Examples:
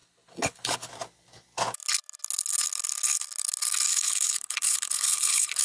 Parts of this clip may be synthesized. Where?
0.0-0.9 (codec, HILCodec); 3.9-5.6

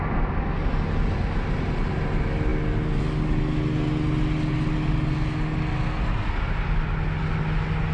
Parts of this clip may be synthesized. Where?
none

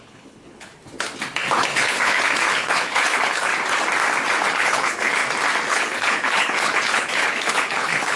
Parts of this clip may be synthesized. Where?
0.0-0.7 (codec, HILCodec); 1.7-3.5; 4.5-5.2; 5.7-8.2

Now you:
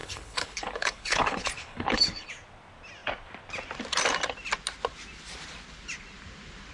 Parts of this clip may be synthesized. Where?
0.0-2.3 (codec, HILCodec)